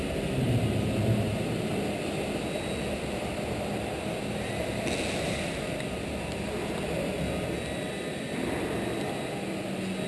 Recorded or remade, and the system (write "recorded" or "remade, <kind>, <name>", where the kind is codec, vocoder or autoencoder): recorded